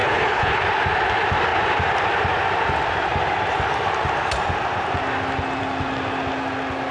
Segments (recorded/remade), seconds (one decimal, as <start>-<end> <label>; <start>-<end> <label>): 0.0-0.6 remade; 0.6-6.9 recorded